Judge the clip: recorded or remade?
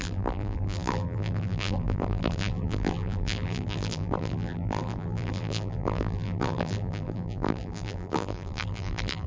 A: remade